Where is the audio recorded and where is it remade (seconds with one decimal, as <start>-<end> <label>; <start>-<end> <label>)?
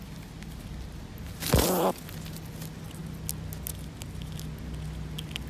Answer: 0.0-5.5 recorded